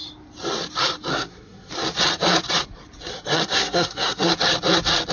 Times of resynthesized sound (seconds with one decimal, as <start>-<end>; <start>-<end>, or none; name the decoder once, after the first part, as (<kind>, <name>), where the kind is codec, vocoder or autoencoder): 1.1-1.7 (codec, SNAC); 3.1-4.3